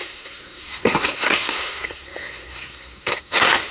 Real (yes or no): no